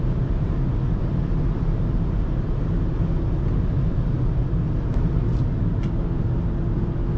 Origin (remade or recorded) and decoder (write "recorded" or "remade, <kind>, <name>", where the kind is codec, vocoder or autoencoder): recorded